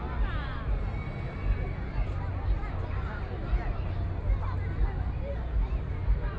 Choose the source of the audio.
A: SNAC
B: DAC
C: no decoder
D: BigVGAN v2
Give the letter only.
C